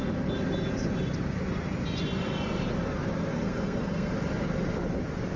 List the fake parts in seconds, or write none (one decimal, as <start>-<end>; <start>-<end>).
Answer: 3.3-4.1